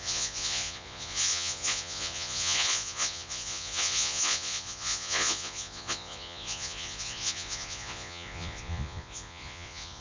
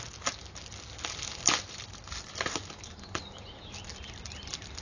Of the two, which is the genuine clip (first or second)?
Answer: second